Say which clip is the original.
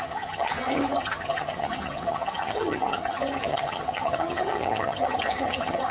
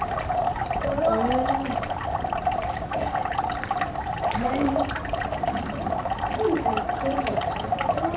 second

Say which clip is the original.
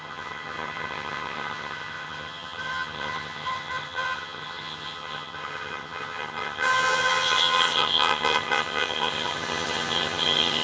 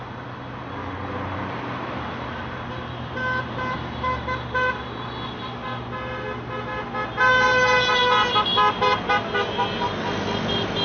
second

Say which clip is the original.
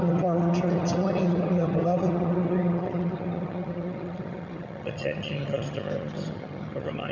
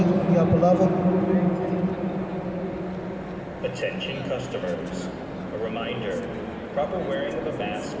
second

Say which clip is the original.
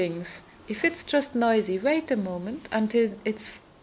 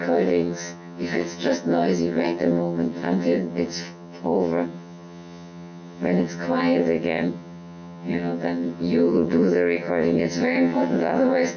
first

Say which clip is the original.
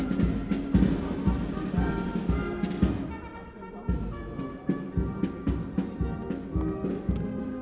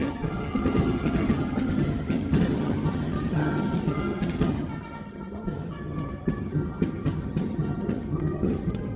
first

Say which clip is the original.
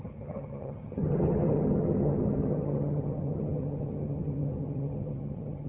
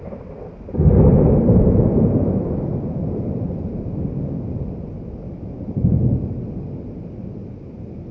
second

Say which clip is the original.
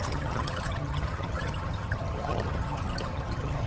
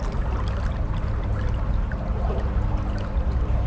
second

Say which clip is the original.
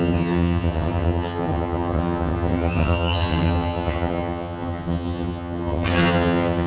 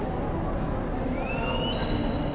second